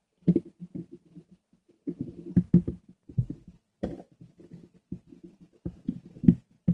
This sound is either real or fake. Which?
real